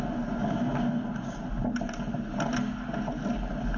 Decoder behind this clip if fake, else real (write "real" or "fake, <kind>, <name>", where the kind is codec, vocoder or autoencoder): real